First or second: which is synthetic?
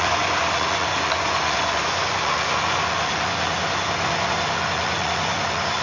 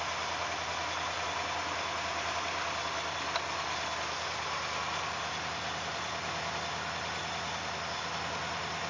first